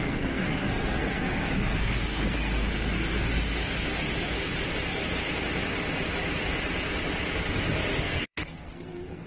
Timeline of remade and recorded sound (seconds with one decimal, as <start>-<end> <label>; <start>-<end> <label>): 0.0-3.3 remade; 3.3-8.0 recorded; 8.0-9.3 remade